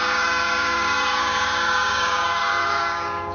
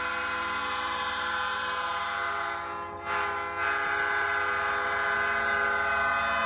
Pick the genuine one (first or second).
second